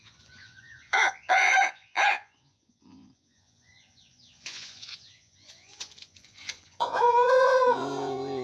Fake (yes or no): yes